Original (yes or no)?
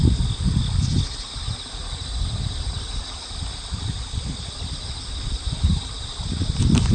yes